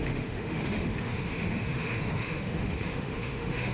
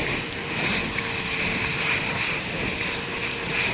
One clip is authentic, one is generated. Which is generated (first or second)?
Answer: first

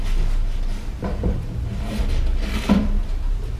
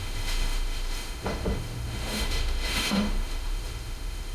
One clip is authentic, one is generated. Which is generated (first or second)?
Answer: second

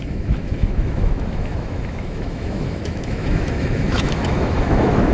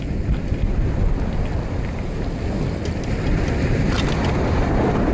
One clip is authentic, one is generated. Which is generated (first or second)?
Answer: first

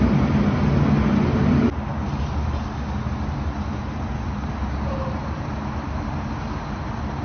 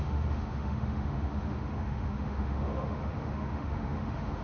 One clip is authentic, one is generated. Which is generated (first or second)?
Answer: second